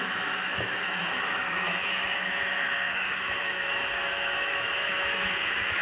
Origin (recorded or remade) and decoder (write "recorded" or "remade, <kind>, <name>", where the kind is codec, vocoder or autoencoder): remade, autoencoder, DAC-VAE